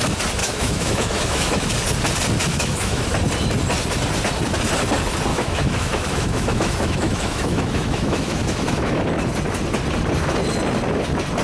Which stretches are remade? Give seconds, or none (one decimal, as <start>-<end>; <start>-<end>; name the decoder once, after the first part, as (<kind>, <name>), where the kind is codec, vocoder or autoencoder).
0.4-1.7 (autoencoder, DAC-VAE); 2.5-3.1; 5.3-9.0